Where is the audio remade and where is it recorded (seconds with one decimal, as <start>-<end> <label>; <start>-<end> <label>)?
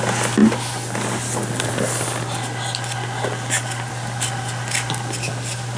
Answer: 0.0-5.8 recorded